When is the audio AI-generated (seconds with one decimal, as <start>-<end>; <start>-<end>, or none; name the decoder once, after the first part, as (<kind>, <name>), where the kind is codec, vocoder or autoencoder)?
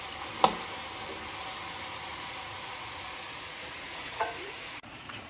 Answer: 2.1-5.3 (vocoder, Vocos)